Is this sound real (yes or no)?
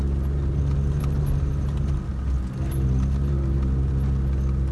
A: yes